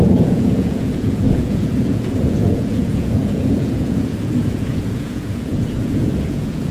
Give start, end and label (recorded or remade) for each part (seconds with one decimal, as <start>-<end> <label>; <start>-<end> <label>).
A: 0.0-6.7 remade